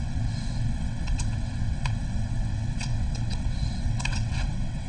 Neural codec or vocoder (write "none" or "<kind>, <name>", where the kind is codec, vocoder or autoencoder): vocoder, WaveNeXt